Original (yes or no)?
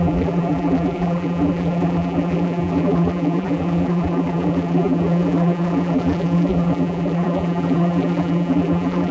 no